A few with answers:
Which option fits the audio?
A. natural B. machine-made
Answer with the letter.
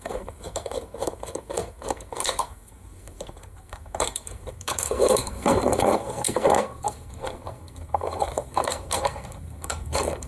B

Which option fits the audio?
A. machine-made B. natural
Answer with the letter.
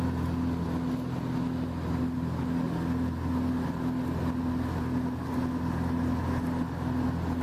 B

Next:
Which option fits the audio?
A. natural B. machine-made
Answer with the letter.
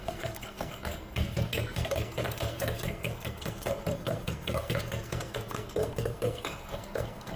B